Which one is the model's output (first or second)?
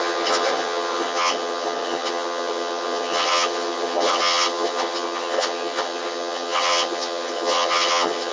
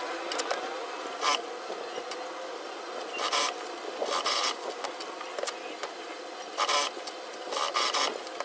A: first